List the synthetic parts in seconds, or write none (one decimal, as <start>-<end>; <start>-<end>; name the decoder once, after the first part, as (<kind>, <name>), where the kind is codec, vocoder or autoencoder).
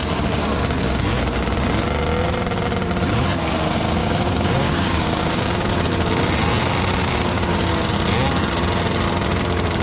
4.0-5.7 (codec, DAC); 7.0-8.0